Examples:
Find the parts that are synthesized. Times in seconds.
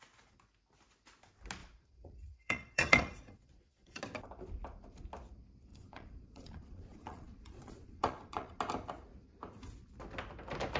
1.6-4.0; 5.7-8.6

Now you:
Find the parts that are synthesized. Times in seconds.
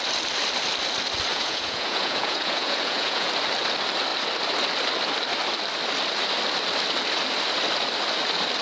1.3-3.3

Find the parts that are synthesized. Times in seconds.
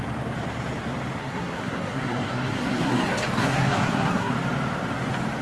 1.2-3.0; 3.4-4.3